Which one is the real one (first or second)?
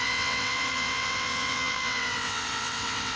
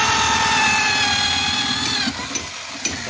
second